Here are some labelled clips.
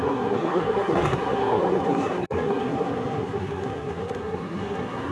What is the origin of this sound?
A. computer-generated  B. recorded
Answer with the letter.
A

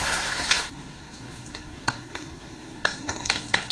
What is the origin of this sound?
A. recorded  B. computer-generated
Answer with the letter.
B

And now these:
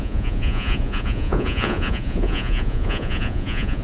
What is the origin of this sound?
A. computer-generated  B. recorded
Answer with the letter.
A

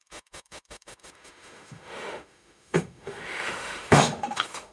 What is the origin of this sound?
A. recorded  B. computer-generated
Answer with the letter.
B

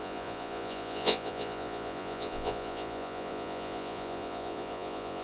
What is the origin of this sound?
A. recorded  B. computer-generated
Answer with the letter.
B